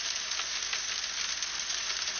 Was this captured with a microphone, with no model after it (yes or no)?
yes